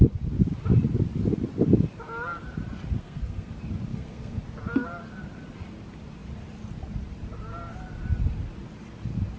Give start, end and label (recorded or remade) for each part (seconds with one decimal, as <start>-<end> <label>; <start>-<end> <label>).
0.0-3.0 recorded; 3.0-3.5 remade; 3.5-3.9 recorded; 3.9-4.4 remade; 4.4-9.4 recorded